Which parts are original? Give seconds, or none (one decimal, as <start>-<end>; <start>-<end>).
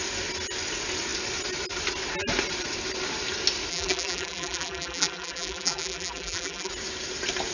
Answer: 0.0-3.7; 6.7-7.5